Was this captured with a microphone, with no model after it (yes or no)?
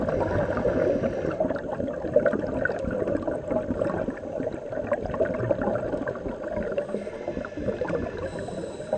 yes